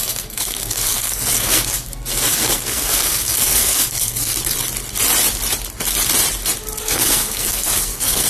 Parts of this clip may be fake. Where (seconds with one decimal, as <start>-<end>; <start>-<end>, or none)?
0.0-4.3; 6.8-8.3